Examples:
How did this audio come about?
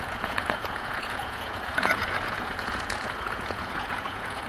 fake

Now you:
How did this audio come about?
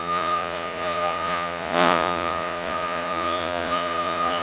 fake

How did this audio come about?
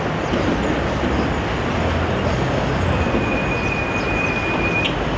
real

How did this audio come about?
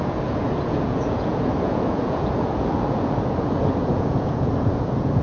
fake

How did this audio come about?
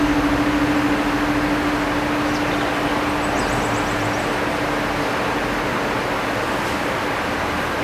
real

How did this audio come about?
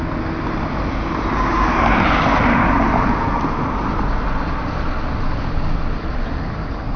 real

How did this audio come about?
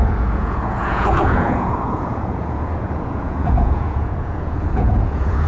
fake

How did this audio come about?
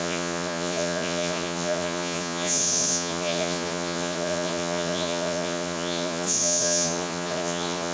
fake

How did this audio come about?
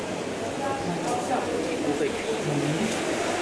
real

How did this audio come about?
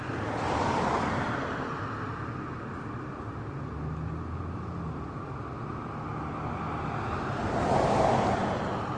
real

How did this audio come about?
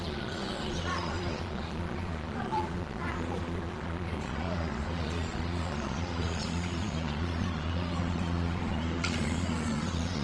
fake